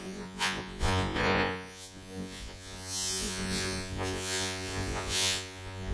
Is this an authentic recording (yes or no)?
no